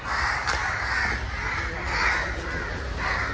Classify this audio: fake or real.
real